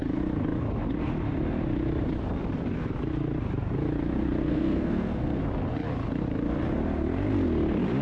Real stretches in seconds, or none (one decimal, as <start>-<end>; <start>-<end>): 0.0-4.4; 5.4-8.0